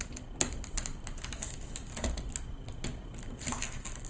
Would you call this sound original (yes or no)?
yes